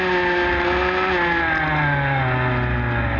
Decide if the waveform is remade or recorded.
recorded